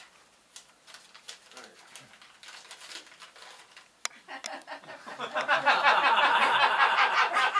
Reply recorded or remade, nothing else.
recorded